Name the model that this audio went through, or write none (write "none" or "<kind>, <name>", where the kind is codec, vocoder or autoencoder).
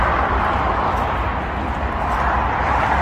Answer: none